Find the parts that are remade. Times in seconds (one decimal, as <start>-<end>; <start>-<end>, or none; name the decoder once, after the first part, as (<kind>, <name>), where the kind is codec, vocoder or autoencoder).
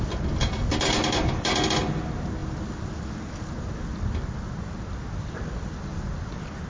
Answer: none